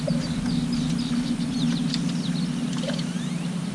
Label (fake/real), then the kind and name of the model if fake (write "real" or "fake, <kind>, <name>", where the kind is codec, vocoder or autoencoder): real